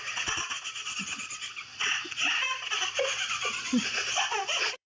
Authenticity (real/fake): fake